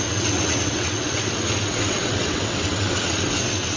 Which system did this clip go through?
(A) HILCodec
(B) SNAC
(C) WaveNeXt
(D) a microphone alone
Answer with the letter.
C